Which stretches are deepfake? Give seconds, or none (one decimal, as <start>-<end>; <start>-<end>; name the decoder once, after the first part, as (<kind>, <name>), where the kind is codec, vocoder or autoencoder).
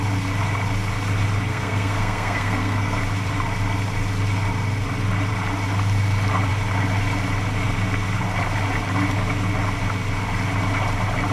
1.5-3.0 (codec, SNAC)